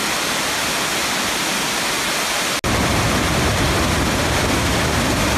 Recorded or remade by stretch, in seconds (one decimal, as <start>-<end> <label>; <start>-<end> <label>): 0.0-5.4 recorded